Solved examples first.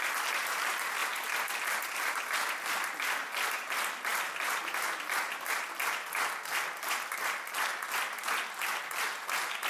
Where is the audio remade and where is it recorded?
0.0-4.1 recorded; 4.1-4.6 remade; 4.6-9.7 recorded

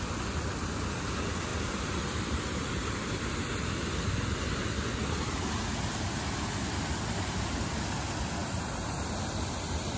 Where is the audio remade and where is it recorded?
0.0-1.5 recorded; 1.5-3.2 remade; 3.2-10.0 recorded

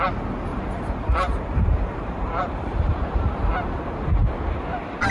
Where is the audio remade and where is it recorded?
0.0-0.5 recorded; 0.5-3.5 remade; 3.5-5.1 recorded